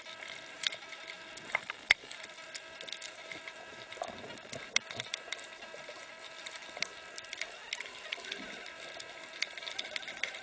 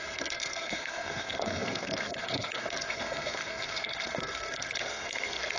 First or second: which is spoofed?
second